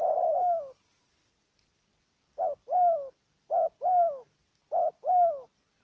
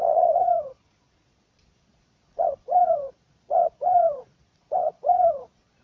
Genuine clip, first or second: first